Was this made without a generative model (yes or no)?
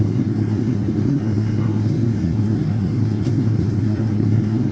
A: no